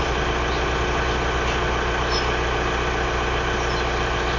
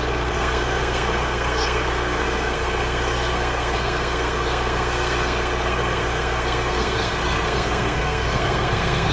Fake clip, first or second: second